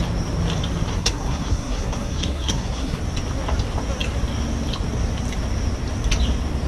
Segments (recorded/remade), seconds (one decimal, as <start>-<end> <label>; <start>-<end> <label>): 0.0-0.9 recorded; 0.9-3.0 remade; 3.0-6.7 recorded